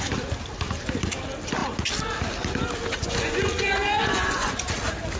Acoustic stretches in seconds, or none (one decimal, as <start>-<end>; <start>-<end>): 0.0-3.0; 4.7-5.2